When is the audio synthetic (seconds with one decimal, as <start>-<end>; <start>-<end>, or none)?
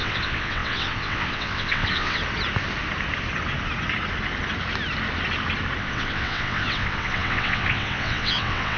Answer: 0.0-2.2; 5.8-8.8